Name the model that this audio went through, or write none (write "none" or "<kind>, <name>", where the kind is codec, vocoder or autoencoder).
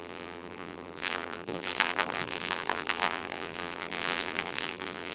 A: vocoder, BigVGAN v2